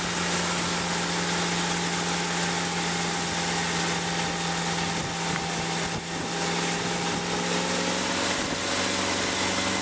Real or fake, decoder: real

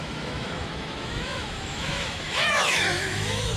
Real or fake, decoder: fake, autoencoder, DAC-VAE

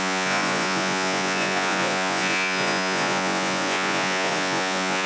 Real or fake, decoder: fake, vocoder, Vocos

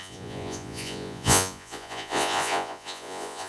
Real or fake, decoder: fake, vocoder, Vocos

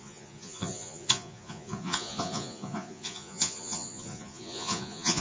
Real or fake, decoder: fake, vocoder, Vocos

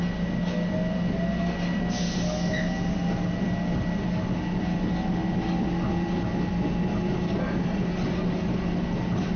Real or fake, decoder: real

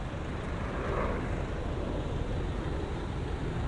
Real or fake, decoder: real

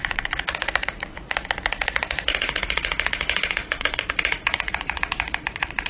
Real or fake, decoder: fake, vocoder, Vocos